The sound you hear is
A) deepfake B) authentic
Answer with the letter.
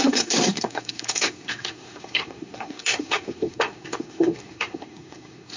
A